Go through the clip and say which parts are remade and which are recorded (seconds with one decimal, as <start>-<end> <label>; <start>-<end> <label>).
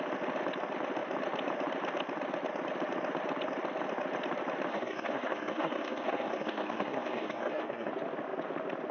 0.0-4.7 recorded; 4.7-7.9 remade; 7.9-8.9 recorded